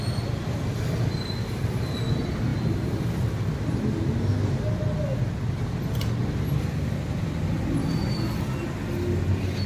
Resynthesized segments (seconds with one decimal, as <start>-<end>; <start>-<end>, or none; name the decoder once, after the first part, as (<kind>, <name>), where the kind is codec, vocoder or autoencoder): none